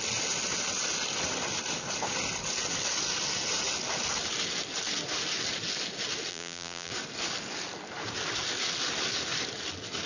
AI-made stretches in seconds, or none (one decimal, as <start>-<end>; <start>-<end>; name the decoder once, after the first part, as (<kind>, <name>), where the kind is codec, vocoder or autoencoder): 6.3-6.9 (vocoder, BigVGAN v2)